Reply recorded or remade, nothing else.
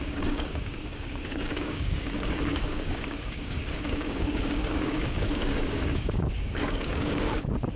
remade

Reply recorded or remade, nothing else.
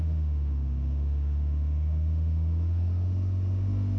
remade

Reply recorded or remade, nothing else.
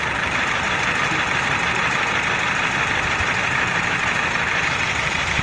remade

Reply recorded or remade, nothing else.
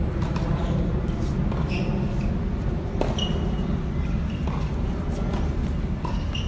recorded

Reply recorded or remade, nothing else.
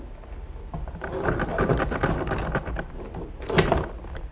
recorded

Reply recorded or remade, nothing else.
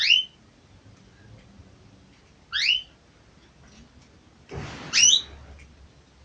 recorded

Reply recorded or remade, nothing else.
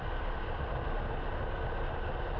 recorded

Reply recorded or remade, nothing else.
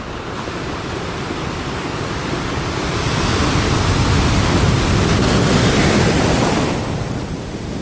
recorded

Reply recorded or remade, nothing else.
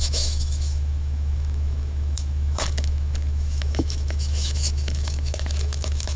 remade